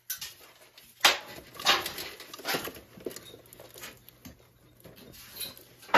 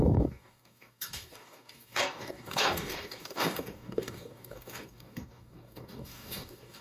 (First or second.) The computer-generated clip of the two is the second